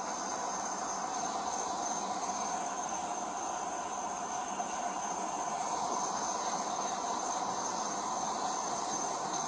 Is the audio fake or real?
real